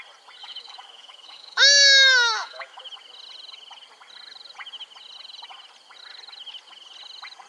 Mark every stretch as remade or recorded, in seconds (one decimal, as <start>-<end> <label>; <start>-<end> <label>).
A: 0.0-0.4 recorded; 0.4-2.8 remade; 2.8-7.5 recorded

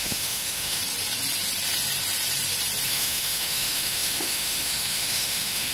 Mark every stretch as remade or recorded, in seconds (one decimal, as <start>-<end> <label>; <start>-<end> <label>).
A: 0.0-0.8 remade; 0.8-2.9 recorded; 2.9-5.7 remade

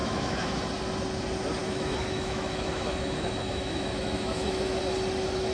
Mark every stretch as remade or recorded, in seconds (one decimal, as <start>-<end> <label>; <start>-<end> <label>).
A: 0.0-0.6 remade; 0.6-1.6 recorded; 1.6-4.8 remade; 4.8-5.5 recorded

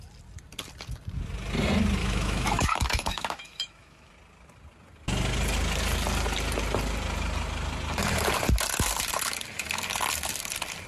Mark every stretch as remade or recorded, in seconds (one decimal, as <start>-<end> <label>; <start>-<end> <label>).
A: 0.0-2.0 recorded; 2.0-4.1 remade; 4.1-10.9 recorded

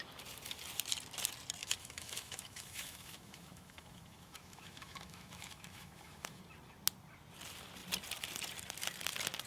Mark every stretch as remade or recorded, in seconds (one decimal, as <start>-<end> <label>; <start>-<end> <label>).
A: 0.0-1.6 recorded; 1.6-6.4 remade; 6.4-9.5 recorded

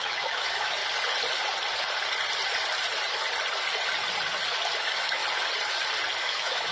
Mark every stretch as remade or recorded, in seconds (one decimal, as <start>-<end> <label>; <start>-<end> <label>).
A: 0.0-0.8 remade; 0.8-4.8 recorded; 4.8-5.2 remade; 5.2-6.2 recorded; 6.2-6.7 remade